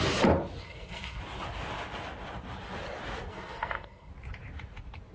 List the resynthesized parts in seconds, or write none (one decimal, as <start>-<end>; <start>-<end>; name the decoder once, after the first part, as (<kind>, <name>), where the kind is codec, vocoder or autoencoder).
0.6-1.2 (codec, SNAC); 3.3-4.1